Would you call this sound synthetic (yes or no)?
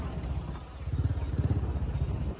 no